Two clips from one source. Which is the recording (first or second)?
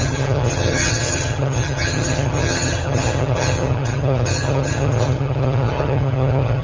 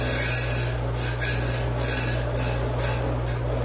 second